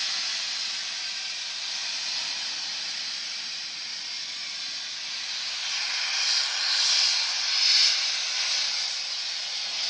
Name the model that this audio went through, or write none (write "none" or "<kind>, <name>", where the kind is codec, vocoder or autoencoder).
none